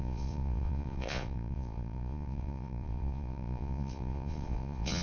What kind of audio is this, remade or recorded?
remade